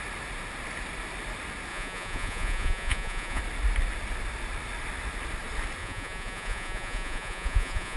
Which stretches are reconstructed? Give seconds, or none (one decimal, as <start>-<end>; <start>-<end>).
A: 1.7-3.4; 5.8-8.0